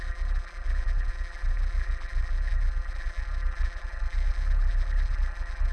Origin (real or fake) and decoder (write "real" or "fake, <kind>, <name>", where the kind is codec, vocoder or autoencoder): fake, vocoder, BigVGAN v2